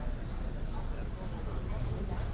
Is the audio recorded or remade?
recorded